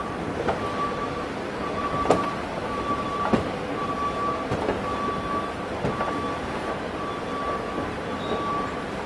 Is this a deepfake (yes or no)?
no